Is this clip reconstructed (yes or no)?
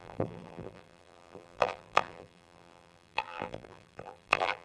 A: yes